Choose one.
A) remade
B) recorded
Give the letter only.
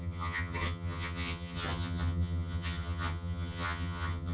A